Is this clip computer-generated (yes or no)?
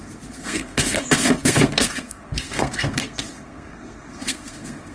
yes